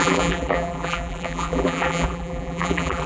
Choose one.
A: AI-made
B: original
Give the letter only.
A